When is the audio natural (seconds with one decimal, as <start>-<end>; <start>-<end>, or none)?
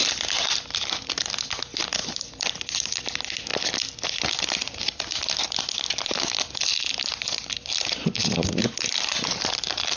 0.0-2.0; 3.0-3.5; 5.4-7.1; 9.4-10.0